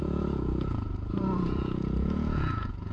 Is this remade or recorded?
remade